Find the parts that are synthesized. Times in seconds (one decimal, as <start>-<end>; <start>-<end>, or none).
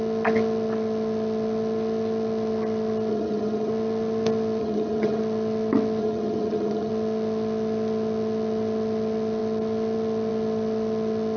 3.1-3.7; 4.6-5.2; 6.0-6.9